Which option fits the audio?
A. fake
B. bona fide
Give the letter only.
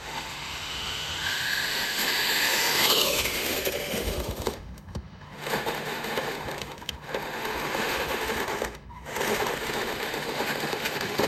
A